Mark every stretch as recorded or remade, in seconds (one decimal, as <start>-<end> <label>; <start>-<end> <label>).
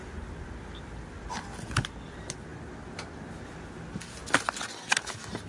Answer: 0.0-5.5 recorded